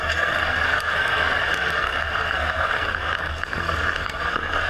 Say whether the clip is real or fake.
fake